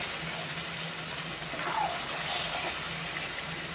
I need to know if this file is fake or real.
real